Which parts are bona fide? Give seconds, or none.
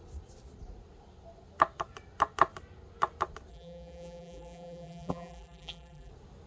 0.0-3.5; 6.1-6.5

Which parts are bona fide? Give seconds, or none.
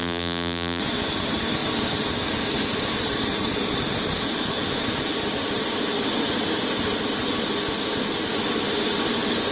0.8-9.5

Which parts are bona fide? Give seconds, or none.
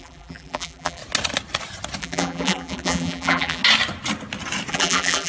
1.0-2.0; 3.6-4.7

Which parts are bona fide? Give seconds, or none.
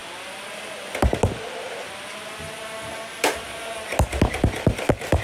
0.0-5.2